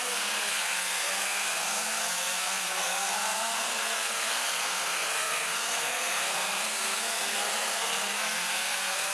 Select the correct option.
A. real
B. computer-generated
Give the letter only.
B